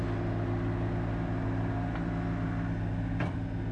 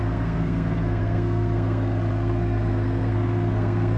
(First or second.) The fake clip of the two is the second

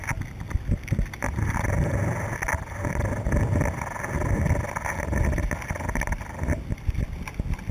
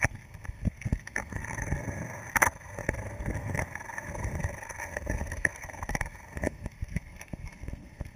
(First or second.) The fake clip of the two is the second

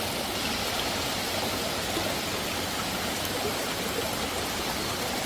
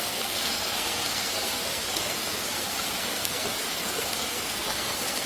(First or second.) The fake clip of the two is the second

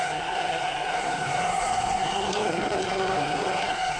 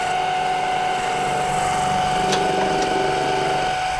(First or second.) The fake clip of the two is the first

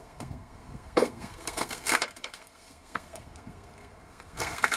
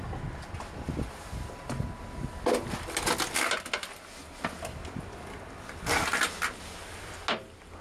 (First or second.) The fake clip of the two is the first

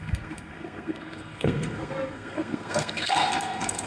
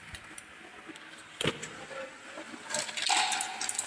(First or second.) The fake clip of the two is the first